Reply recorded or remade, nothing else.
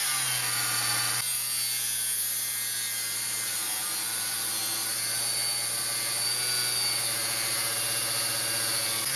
recorded